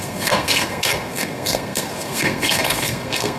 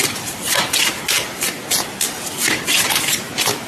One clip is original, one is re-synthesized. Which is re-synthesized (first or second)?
first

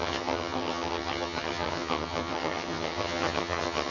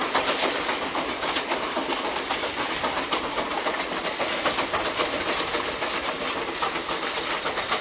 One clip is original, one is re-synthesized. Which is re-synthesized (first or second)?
first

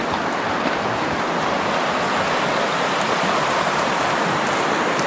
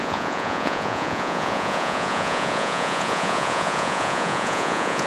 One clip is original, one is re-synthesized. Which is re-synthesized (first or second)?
second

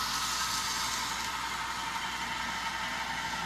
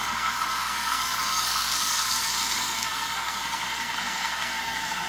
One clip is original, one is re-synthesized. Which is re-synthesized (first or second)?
second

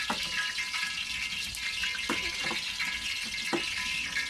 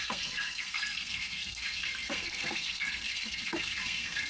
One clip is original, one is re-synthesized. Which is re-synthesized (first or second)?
second